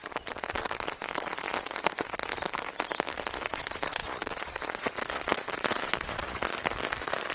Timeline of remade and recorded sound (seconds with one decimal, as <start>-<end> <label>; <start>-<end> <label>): 0.0-2.2 remade; 2.2-3.3 recorded; 3.3-6.5 remade; 6.5-7.3 recorded